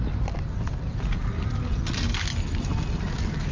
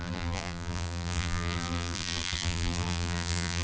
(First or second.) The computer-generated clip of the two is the second